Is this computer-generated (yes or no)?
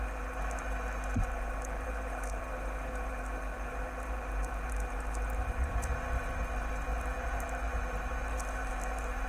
yes